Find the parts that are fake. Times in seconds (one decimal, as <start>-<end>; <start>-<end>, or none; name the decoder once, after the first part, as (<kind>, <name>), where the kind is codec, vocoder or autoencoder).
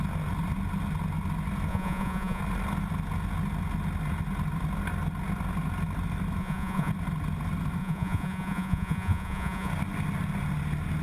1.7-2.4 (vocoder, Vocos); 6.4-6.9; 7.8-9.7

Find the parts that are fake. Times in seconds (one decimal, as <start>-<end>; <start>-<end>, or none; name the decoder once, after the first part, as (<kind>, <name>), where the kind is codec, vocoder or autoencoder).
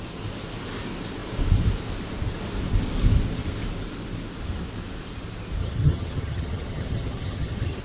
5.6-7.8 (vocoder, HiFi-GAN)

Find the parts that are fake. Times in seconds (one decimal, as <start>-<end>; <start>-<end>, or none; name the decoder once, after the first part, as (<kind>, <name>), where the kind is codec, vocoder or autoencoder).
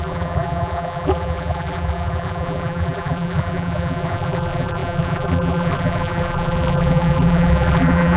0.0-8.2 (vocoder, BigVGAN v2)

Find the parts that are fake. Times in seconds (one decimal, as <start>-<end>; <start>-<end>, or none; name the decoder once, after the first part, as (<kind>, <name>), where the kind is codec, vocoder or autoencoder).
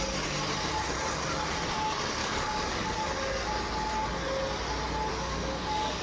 2.2-3.1 (codec, DAC); 5.1-6.0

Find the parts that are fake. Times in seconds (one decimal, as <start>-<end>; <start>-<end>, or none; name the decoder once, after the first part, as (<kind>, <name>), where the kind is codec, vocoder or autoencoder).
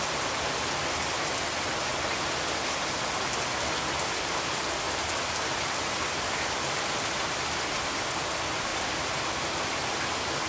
none